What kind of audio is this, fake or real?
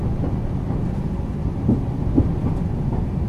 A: real